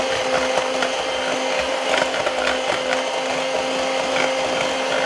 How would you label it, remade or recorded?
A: recorded